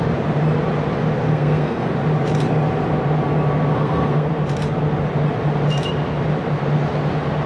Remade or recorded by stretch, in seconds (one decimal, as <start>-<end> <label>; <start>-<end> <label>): 0.0-1.3 recorded; 1.3-1.9 remade; 1.9-3.7 recorded; 3.7-4.3 remade; 4.3-7.5 recorded